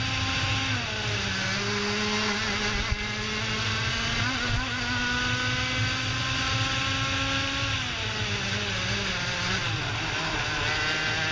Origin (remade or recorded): recorded